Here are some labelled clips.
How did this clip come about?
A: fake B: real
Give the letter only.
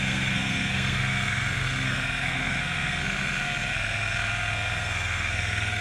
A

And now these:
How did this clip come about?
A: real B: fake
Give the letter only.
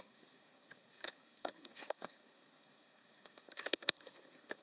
B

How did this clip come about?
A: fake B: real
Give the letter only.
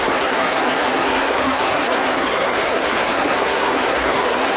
A